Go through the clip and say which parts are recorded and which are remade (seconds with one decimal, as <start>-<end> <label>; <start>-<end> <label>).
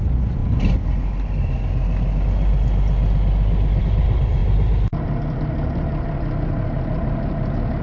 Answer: 0.0-7.8 recorded